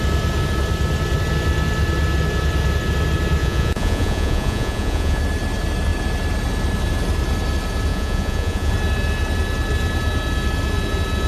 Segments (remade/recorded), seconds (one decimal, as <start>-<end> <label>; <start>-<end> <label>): 0.0-3.4 recorded; 3.4-5.2 remade; 5.2-7.9 recorded; 7.9-8.7 remade; 8.7-11.3 recorded